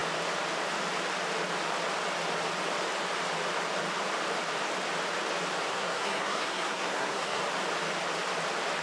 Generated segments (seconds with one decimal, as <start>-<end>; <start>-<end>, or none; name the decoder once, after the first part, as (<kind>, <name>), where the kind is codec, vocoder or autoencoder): 5.7-7.4 (codec, SNAC)